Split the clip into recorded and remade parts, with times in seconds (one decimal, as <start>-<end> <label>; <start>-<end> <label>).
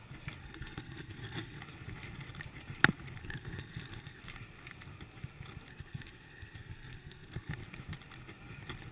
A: 0.0-0.4 recorded; 0.4-1.6 remade; 1.6-3.2 recorded; 3.2-4.2 remade; 4.2-5.7 recorded; 5.7-7.5 remade; 7.5-8.9 recorded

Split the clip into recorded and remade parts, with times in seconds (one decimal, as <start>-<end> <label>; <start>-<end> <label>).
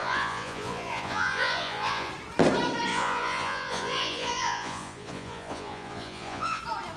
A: 0.0-2.1 remade; 2.1-2.9 recorded; 2.9-6.6 remade; 6.6-7.0 recorded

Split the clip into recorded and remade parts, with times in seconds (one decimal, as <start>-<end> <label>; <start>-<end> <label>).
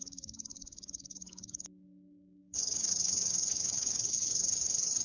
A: 0.0-5.0 remade